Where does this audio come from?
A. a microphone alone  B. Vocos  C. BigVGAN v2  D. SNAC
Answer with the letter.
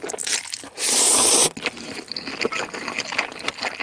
A